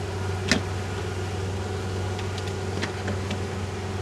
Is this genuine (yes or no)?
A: yes